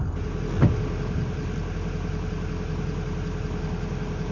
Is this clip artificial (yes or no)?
no